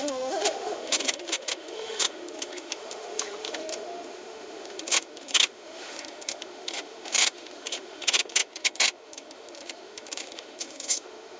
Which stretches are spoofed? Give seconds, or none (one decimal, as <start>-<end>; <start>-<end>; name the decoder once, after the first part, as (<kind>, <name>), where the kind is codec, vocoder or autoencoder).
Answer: 0.0-11.4 (autoencoder, DAC-VAE)